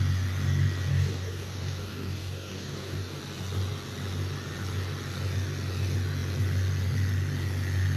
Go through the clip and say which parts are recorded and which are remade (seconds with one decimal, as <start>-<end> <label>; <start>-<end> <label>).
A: 0.0-0.9 recorded; 0.9-3.2 remade; 3.2-8.0 recorded